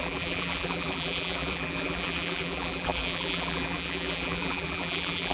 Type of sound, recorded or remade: remade